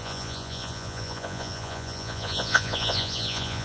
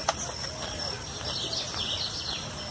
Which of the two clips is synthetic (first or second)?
first